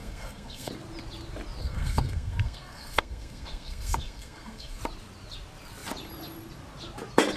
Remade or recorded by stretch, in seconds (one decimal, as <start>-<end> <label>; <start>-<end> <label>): 0.0-0.7 remade; 0.7-1.6 recorded; 1.6-4.8 remade; 4.8-7.4 recorded